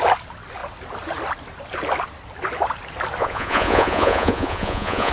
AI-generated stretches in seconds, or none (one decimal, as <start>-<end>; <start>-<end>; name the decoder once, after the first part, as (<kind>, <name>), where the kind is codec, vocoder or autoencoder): 3.2-5.1 (vocoder, Vocos)